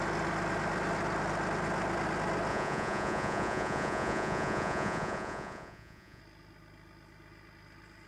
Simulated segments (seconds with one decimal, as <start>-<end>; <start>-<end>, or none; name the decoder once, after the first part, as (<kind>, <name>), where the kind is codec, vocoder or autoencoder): 2.5-6.2 (vocoder, Vocos)